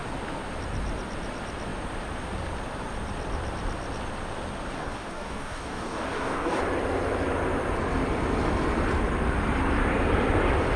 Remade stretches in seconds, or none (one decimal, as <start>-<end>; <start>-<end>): 4.7-6.6